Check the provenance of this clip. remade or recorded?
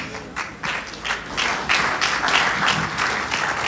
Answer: recorded